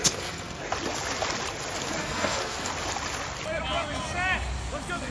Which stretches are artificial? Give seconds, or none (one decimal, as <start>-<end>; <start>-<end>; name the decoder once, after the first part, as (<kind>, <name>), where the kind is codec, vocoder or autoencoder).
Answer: 0.0-0.6 (codec, SNAC); 2.0-2.7